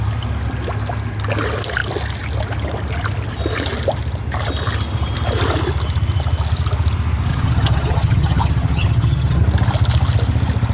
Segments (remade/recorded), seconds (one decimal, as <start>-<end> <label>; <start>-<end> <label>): 0.0-7.3 recorded; 7.3-9.4 remade; 9.4-10.7 recorded